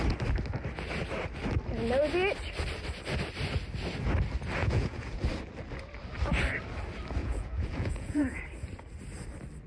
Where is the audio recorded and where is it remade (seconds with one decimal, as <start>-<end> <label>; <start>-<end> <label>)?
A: 0.0-4.6 recorded; 4.6-5.2 remade; 5.2-7.2 recorded; 7.2-8.4 remade; 8.4-9.7 recorded